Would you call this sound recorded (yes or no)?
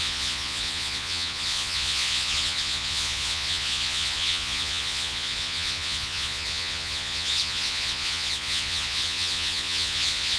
no